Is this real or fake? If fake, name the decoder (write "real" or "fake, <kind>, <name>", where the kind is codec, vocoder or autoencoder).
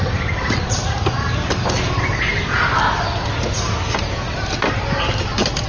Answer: real